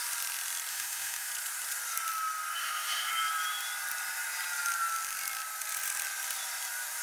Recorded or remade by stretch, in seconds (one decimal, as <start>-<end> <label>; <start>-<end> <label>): 0.0-0.7 recorded; 0.7-1.3 remade; 1.3-2.6 recorded; 2.6-3.1 remade; 3.1-7.0 recorded